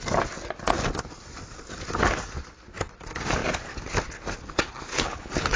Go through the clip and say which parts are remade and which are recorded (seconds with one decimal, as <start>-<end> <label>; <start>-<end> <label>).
0.0-4.9 recorded; 4.9-5.6 remade